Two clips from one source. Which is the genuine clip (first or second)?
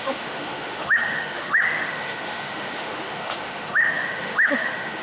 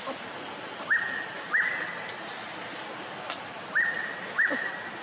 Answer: second